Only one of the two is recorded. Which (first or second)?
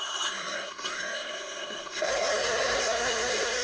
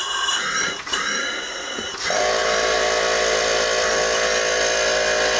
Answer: second